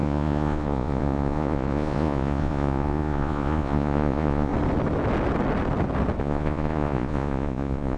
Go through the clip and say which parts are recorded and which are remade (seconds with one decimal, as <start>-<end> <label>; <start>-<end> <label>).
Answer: 0.0-4.5 remade; 4.5-6.2 recorded; 6.2-8.0 remade